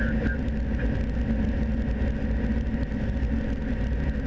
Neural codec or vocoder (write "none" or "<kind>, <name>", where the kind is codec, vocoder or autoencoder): none